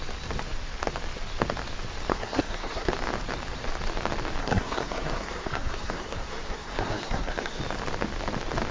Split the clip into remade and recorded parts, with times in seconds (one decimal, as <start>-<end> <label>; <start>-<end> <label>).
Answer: 0.0-2.1 recorded; 2.1-2.9 remade; 2.9-4.4 recorded; 4.4-7.6 remade; 7.6-8.7 recorded